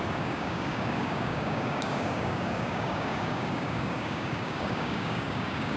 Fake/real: fake